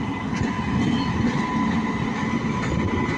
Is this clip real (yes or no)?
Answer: yes